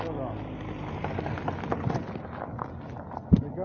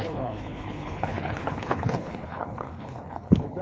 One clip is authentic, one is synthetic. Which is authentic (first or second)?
first